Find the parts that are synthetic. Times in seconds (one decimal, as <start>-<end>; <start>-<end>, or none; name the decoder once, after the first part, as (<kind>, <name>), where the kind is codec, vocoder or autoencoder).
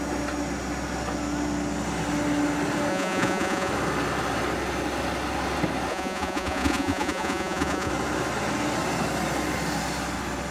2.9-3.7 (vocoder, Vocos); 5.9-7.9